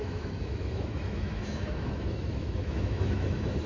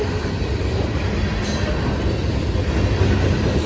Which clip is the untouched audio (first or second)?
second